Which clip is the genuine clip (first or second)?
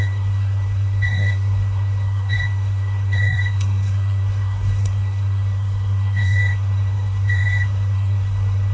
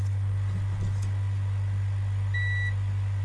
second